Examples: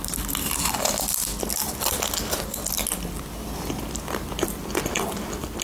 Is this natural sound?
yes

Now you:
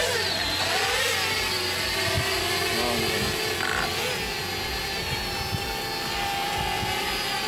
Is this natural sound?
yes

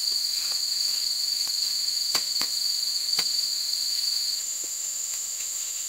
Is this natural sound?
no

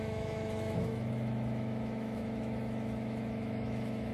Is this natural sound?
no